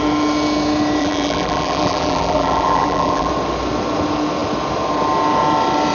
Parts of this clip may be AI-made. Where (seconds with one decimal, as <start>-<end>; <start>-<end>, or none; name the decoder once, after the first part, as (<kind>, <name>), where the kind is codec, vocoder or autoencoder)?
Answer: 1.0-3.3 (vocoder, BigVGAN v2)